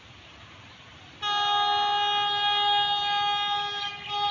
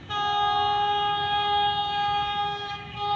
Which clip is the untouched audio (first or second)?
first